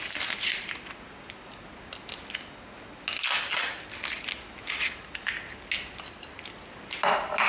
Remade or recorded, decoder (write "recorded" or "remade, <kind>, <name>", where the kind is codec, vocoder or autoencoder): recorded